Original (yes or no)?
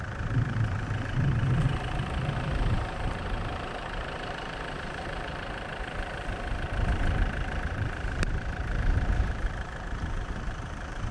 no